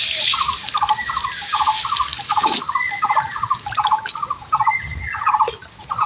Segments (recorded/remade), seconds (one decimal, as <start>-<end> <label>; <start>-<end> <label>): 0.0-2.1 recorded; 2.1-2.7 remade; 2.7-6.1 recorded